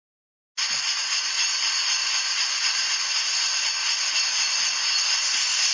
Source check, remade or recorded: recorded